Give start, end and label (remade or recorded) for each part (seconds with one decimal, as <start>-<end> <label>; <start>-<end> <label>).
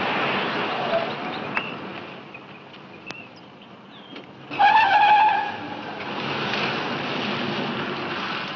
0.0-8.6 recorded